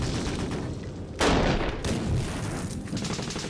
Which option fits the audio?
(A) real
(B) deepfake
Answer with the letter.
A